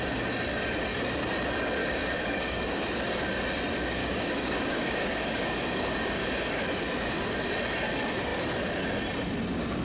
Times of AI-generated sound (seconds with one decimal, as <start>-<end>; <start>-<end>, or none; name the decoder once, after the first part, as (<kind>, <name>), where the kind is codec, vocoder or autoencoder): 1.8-2.8 (codec, DAC); 4.0-6.5